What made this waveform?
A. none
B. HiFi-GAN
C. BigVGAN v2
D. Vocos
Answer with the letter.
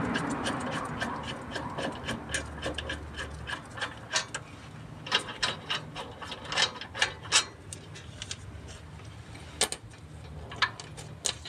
A